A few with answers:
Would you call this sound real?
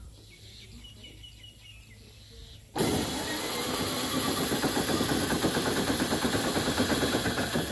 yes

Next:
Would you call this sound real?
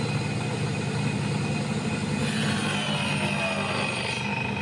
yes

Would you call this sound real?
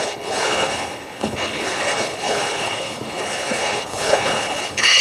no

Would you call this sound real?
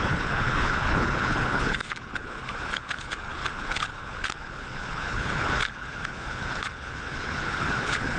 no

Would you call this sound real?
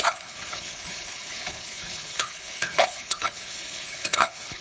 no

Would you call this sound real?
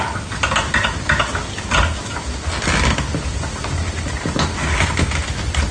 yes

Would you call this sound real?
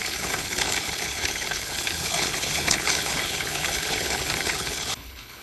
no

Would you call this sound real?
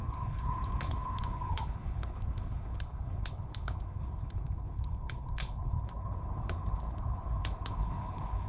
no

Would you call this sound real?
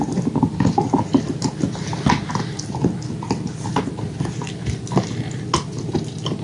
yes